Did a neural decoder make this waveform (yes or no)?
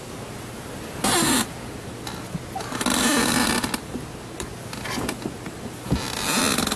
no